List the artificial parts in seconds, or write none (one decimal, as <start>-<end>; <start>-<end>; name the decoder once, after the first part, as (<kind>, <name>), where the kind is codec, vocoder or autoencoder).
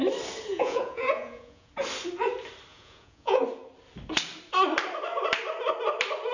0.5-1.7 (vocoder, Vocos); 2.7-3.4